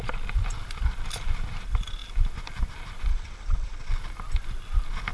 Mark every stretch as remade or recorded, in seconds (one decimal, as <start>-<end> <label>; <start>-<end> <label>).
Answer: 0.0-3.1 recorded; 3.1-3.9 remade; 3.9-5.1 recorded